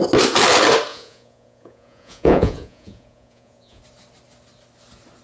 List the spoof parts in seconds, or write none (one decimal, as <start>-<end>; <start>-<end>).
0.9-3.8